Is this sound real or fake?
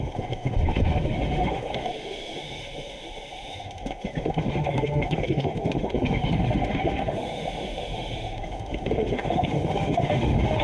fake